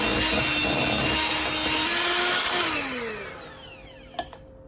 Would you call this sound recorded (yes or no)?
yes